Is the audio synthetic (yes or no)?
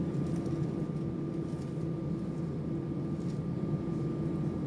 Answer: no